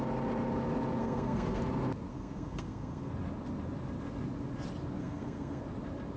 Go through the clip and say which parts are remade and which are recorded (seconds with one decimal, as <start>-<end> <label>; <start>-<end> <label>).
0.0-1.0 recorded; 1.0-1.6 remade; 1.6-2.1 recorded; 2.1-3.1 remade; 3.1-5.0 recorded; 5.0-5.6 remade; 5.6-6.2 recorded